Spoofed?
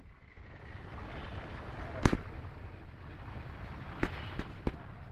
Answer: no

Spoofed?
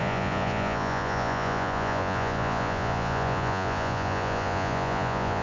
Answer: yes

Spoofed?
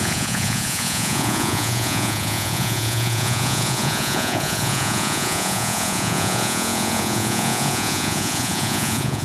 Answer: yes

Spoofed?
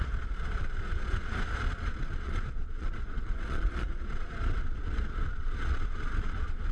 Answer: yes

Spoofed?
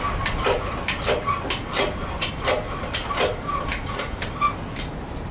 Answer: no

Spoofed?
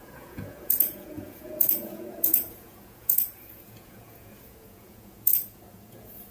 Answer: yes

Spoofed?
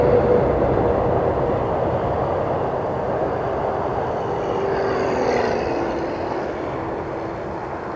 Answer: no